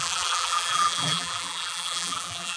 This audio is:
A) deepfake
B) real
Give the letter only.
A